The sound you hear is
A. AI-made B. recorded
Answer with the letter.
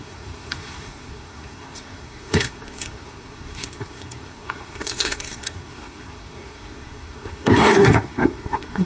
A